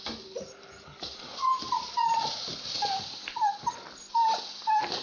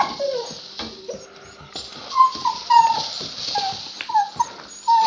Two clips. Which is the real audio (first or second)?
second